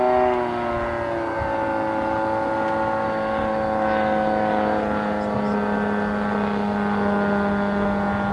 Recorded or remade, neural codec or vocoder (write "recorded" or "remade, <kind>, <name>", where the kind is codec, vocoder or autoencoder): recorded